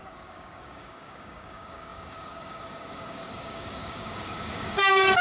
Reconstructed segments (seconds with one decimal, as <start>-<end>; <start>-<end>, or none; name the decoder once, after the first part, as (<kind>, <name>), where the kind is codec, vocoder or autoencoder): 0.0-5.2 (codec, DAC)